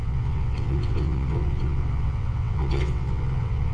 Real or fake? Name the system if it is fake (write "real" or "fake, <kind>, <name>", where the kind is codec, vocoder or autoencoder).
fake, vocoder, WaveNeXt